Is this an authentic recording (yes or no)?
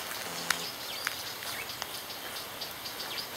yes